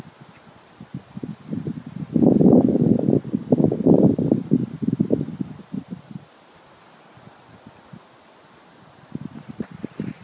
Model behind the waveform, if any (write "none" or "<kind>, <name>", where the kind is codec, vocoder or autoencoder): none